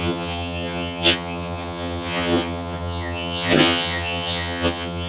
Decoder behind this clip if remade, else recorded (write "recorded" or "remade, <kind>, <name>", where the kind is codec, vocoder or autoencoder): remade, vocoder, HiFi-GAN